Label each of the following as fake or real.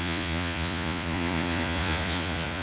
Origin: fake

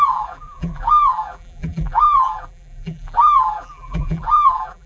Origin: fake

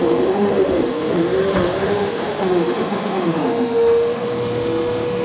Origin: fake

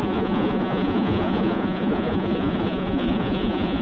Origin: fake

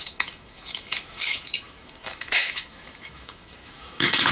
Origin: fake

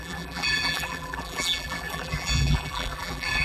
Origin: fake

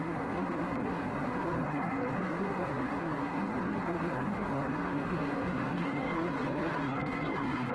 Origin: fake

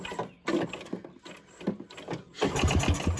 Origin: real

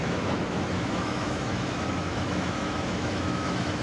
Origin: fake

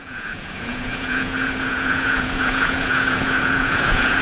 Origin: fake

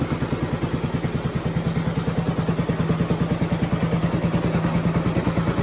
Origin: real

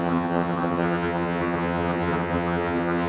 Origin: fake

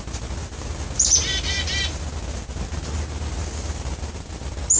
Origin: real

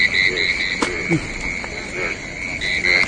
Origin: real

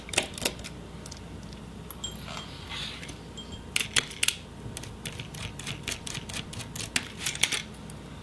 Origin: real